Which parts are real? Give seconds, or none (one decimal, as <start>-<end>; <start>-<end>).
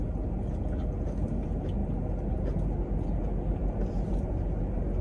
0.0-5.0